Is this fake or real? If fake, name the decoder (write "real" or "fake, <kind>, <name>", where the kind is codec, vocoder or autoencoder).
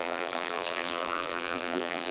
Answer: fake, vocoder, BigVGAN v2